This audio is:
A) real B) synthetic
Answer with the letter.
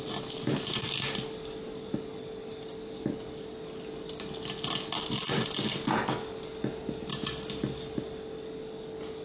A